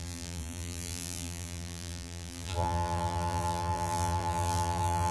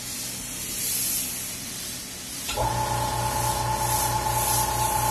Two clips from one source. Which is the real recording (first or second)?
second